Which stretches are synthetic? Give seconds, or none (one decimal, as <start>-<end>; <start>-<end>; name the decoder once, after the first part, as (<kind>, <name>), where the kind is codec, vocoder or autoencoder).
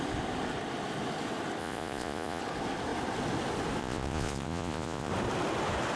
1.6-2.4 (vocoder, Vocos); 3.8-5.1